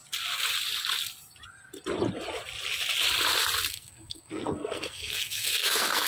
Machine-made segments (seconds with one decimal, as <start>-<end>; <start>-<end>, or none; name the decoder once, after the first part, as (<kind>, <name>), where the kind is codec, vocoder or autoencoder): 3.7-6.1 (codec, SNAC)